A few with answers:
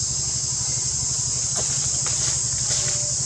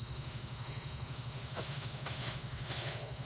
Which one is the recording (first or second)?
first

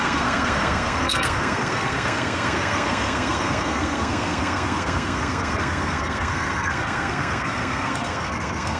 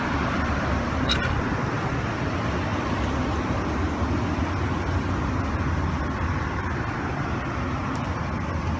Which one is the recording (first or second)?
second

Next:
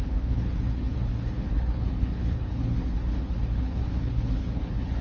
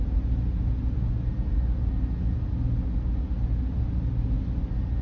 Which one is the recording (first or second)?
second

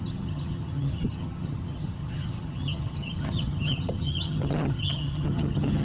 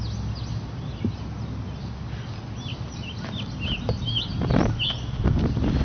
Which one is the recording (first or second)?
second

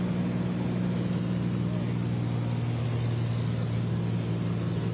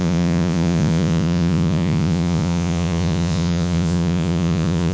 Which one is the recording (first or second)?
first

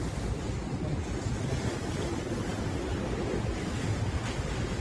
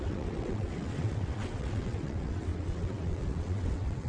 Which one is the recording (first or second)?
first